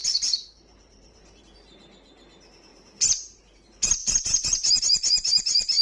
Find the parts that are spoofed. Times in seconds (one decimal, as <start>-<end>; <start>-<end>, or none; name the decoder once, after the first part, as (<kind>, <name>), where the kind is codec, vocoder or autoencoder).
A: 0.0-1.4 (vocoder, BigVGAN v2); 2.7-3.4; 4.0-4.8